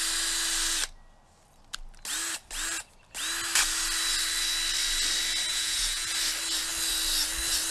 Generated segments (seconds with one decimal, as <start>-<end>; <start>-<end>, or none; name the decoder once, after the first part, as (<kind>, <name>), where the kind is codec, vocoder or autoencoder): 5.5-6.1 (vocoder, Vocos)